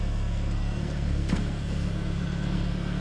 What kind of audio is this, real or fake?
fake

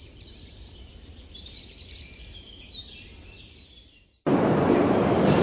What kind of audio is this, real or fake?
fake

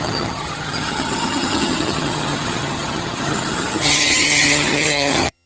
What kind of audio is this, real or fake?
fake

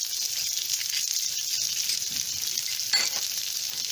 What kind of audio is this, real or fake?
real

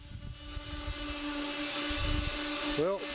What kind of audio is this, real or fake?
real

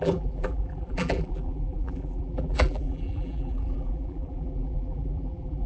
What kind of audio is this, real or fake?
fake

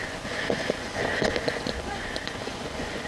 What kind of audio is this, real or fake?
fake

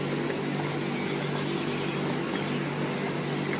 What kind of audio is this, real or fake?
real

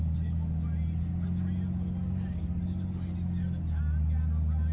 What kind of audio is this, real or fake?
real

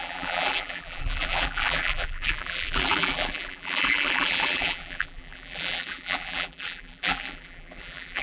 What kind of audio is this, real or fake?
fake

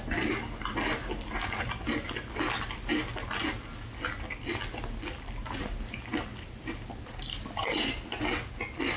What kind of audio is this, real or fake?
real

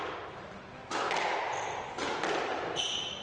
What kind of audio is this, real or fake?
real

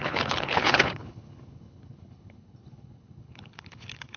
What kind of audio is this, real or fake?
fake